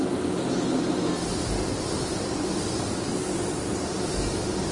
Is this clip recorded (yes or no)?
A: yes